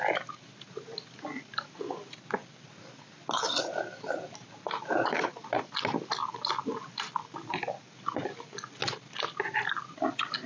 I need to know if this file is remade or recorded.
recorded